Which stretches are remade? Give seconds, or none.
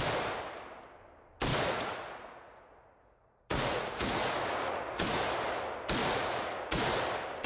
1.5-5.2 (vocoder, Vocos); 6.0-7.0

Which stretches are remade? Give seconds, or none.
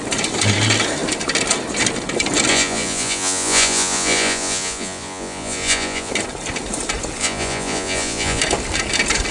2.5-6.1 (vocoder, Vocos); 7.2-8.4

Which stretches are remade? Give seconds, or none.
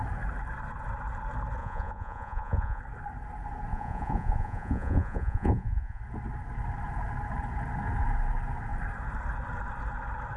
1.6-2.8 (vocoder, Vocos); 3.7-6.0